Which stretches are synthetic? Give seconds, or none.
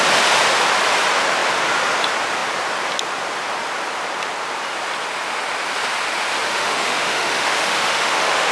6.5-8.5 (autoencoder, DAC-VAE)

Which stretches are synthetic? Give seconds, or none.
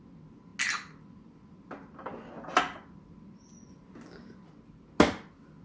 none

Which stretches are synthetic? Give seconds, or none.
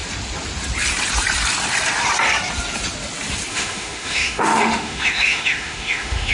3.5-6.3 (autoencoder, DAC-VAE)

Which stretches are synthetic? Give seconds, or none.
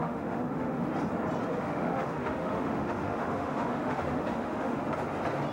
0.0-0.9 (autoencoder, DAC-VAE); 1.5-4.8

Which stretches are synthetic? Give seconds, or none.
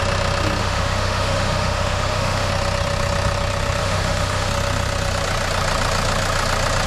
0.6-2.5 (autoencoder, DAC-VAE); 3.8-4.5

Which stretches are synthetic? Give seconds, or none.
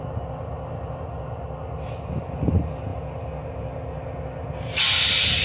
none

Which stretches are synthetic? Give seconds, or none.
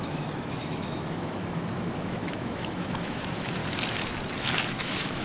0.0-3.6 (autoencoder, DAC-VAE); 4.8-5.2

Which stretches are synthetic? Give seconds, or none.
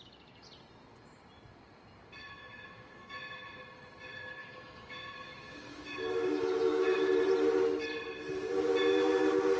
2.2-3.6 (autoencoder, DAC-VAE); 4.4-7.1